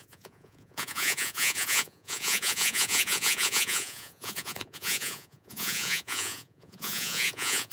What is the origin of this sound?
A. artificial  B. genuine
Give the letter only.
A